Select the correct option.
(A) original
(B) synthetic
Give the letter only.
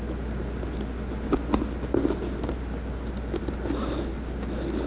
A